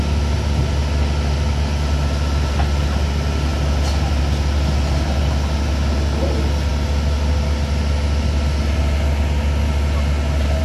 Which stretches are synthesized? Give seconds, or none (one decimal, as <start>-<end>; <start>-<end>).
none